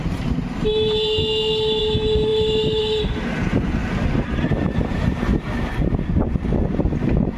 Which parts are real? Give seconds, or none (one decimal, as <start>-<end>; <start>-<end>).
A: 1.2-1.8; 2.3-2.8; 3.8-4.4; 5.3-6.8